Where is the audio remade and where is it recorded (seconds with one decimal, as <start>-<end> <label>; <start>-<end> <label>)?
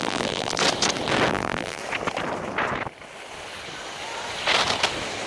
0.0-0.6 remade; 0.6-1.3 recorded; 1.3-1.8 remade; 1.8-5.3 recorded